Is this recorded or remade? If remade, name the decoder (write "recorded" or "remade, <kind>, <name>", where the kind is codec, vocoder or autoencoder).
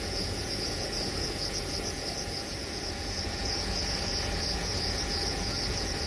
remade, vocoder, Vocos